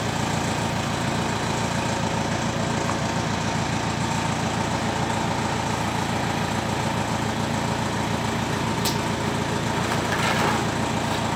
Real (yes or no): yes